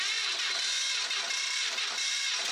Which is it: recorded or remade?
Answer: recorded